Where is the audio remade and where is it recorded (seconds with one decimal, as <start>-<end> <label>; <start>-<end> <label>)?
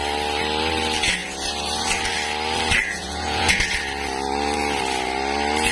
0.0-2.8 recorded; 2.8-3.6 remade; 3.6-5.7 recorded